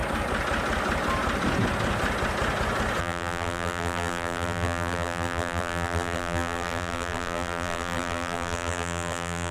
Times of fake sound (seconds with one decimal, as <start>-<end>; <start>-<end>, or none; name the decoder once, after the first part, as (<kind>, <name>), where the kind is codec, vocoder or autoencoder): 3.0-9.5 (vocoder, BigVGAN v2)